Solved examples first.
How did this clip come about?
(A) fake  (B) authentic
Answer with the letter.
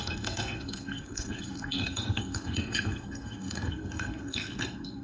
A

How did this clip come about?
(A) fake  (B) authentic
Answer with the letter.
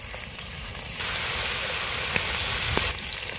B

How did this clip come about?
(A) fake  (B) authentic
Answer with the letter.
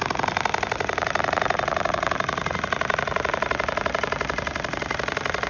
A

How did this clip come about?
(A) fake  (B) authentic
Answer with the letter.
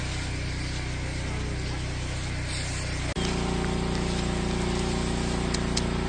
B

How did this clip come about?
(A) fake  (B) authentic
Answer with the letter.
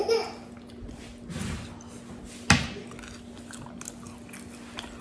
B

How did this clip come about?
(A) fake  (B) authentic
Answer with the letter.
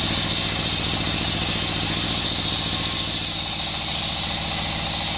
B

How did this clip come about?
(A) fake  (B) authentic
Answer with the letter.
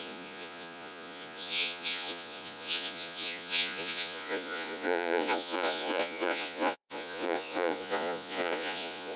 A